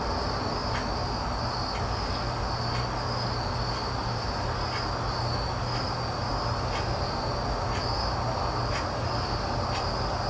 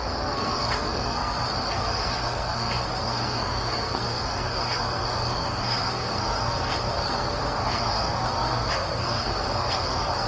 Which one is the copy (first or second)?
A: second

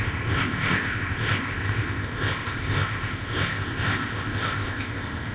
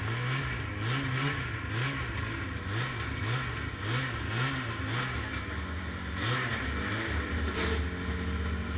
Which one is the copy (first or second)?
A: first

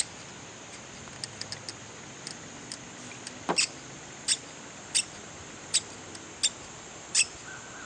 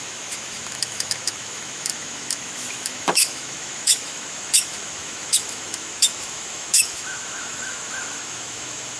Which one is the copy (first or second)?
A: second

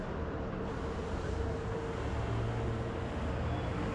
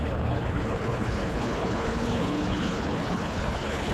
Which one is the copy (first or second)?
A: second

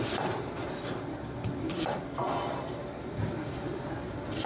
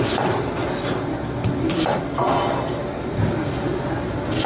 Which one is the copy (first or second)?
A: first